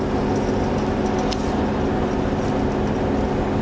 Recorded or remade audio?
recorded